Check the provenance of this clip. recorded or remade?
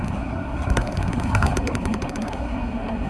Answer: remade